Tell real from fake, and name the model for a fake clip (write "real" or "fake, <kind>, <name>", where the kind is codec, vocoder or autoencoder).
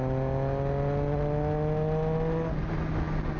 real